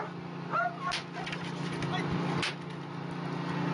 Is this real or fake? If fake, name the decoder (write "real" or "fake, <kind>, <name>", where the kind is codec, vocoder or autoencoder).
real